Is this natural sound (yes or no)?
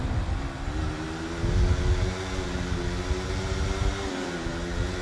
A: yes